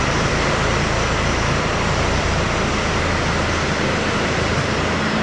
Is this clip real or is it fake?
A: fake